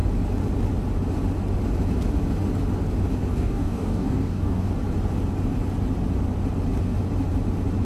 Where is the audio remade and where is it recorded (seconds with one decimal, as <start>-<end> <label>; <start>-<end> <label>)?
0.0-3.3 recorded; 3.3-4.7 remade; 4.7-7.8 recorded